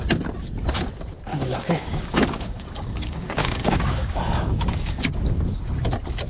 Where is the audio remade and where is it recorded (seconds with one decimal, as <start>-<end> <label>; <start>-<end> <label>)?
0.0-1.3 recorded; 1.3-5.1 remade; 5.1-6.3 recorded